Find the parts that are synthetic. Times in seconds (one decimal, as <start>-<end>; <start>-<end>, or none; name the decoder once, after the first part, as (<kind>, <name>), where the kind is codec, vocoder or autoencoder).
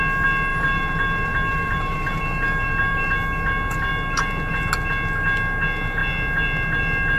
0.5-3.1 (vocoder, BigVGAN v2)